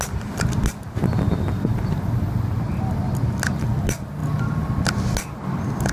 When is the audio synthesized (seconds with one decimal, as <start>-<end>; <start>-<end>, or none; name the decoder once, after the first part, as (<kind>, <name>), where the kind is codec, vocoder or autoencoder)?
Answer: none